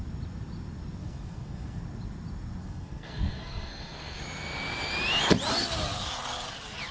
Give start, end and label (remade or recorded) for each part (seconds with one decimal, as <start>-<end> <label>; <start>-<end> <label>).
0.0-1.0 recorded; 1.0-1.8 remade; 1.8-2.6 recorded; 2.6-4.2 remade; 4.2-6.9 recorded